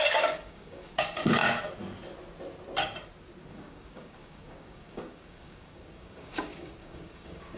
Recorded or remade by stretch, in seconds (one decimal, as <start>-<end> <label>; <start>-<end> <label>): 0.0-1.4 remade; 1.4-3.5 recorded; 3.5-7.6 remade